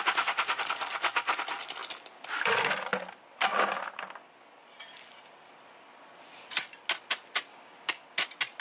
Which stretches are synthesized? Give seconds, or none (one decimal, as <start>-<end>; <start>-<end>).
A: 7.5-8.0